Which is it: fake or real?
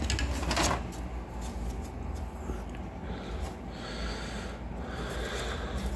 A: real